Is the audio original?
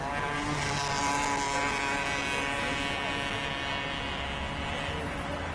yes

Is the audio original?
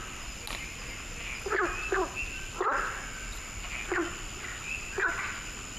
yes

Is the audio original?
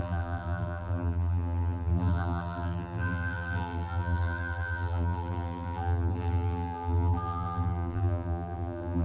no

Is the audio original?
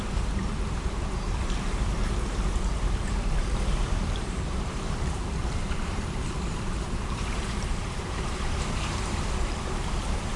no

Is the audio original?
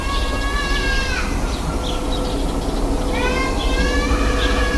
yes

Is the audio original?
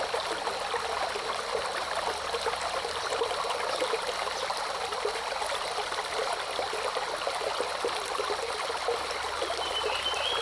yes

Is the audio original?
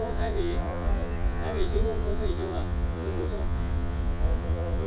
no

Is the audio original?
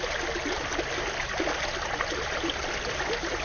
yes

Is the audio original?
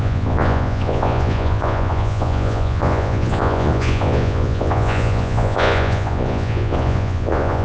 no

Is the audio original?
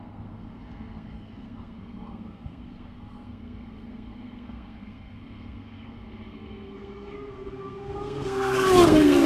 no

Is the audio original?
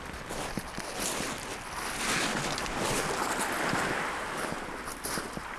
yes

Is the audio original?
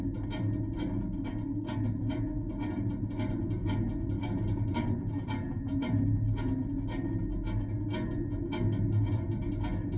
yes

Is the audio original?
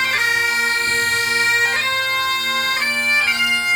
yes